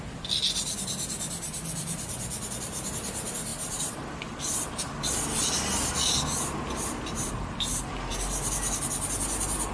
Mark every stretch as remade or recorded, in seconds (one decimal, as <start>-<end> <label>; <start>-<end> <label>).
0.0-9.7 recorded